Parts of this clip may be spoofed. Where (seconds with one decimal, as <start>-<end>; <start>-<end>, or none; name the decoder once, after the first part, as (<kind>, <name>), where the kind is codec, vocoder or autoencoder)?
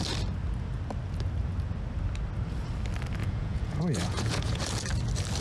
3.2-4.6 (vocoder, Vocos)